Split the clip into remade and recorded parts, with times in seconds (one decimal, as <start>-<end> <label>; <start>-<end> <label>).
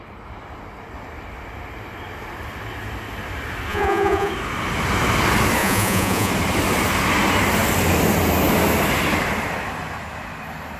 0.0-3.7 recorded; 3.7-4.3 remade; 4.3-5.6 recorded; 5.6-6.3 remade; 6.3-10.8 recorded